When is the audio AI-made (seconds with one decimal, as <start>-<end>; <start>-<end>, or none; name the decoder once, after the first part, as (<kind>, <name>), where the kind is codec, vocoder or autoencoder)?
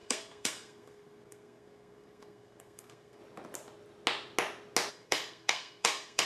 0.0-3.2 (codec, SNAC); 4.9-6.3